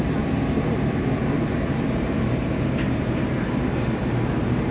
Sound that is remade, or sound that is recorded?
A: remade